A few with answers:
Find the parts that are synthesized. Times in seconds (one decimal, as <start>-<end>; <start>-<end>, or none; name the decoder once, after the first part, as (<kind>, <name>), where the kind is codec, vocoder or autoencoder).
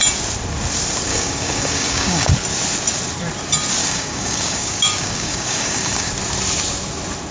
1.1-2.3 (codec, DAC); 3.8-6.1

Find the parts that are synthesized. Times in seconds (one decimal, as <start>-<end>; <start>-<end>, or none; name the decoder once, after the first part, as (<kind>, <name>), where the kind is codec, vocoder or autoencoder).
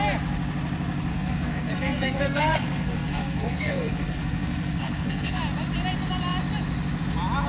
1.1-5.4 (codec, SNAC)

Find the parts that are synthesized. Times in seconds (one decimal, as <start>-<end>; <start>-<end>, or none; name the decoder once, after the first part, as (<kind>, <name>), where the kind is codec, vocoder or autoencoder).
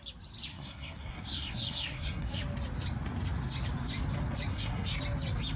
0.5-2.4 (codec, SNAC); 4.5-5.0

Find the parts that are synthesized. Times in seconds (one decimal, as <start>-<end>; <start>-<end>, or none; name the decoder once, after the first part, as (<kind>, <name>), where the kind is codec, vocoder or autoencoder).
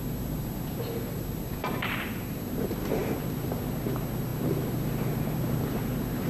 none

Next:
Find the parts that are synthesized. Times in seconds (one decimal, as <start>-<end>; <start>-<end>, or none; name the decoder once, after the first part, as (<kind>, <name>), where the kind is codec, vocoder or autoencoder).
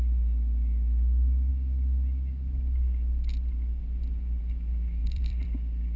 5.0-6.0 (vocoder, BigVGAN v2)